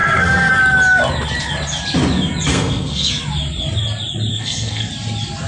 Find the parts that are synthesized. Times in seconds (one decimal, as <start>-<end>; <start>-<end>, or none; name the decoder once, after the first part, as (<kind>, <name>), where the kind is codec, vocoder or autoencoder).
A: 0.0-0.5 (codec, SNAC); 2.5-3.1; 4.3-4.9